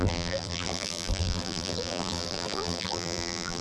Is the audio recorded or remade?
remade